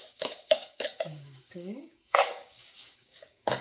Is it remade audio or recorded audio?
remade